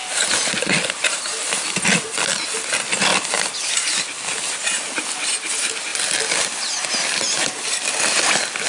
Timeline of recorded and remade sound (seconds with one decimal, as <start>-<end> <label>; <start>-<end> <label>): 0.0-8.7 recorded